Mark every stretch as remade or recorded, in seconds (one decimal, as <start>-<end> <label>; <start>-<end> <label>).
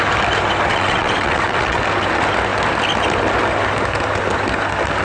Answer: 0.0-0.7 recorded; 0.7-1.8 remade; 1.8-5.0 recorded